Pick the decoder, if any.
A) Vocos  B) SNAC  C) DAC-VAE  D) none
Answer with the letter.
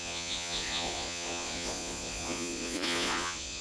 A